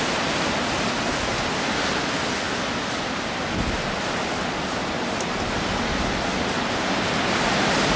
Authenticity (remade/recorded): recorded